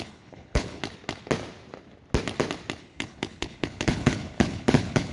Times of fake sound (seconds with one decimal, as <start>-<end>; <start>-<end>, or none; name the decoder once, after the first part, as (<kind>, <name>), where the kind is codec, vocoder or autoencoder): 0.0-0.8 (codec, HILCodec); 2.8-5.1